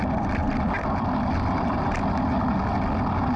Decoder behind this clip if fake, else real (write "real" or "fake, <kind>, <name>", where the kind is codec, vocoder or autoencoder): real